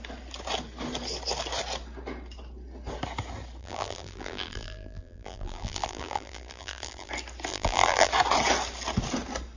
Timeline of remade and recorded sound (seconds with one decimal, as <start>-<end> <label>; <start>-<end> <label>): 0.0-3.6 recorded; 3.6-7.1 remade; 7.1-7.5 recorded; 7.5-8.1 remade; 8.1-9.6 recorded